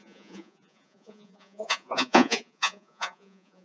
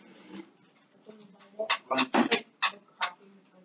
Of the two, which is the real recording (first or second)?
second